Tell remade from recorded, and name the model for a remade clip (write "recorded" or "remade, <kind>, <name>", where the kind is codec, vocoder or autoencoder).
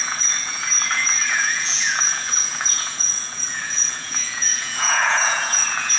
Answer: remade, vocoder, Vocos